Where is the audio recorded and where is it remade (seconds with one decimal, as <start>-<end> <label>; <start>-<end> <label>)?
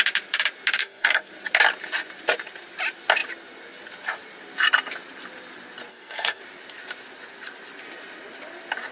0.0-0.8 recorded; 0.8-1.3 remade; 1.3-5.9 recorded; 5.9-6.4 remade; 6.4-8.9 recorded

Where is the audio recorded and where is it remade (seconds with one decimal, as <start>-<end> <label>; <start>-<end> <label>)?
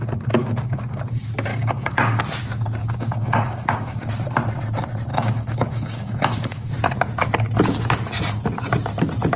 0.0-0.4 recorded; 0.4-1.0 remade; 1.0-1.5 recorded; 1.5-2.2 remade; 2.2-2.8 recorded; 2.8-4.1 remade; 4.1-5.1 recorded; 5.1-6.7 remade; 6.7-9.4 recorded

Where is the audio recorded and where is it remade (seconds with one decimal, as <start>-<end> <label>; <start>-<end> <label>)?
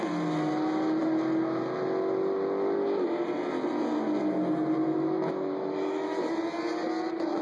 0.0-4.8 recorded; 4.8-6.3 remade; 6.3-7.4 recorded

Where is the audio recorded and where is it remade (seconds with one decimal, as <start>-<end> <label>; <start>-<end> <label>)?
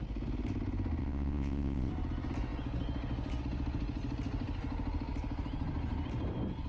0.0-1.0 recorded; 1.0-1.9 remade; 1.9-6.7 recorded